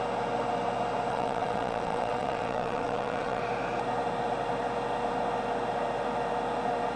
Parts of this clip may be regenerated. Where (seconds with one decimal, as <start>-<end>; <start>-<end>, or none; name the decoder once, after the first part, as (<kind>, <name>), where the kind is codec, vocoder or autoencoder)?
1.1-3.4 (vocoder, WaveNeXt)